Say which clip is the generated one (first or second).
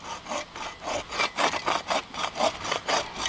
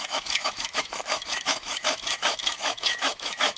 second